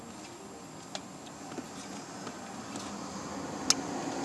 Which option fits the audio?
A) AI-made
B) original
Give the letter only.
B